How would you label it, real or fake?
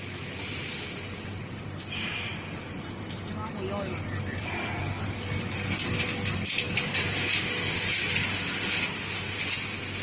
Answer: real